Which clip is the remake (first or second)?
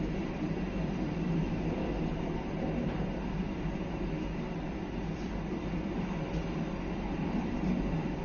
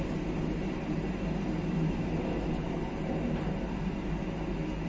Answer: first